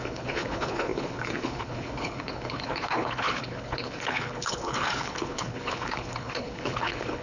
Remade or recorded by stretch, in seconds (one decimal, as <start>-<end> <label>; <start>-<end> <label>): 0.0-7.2 remade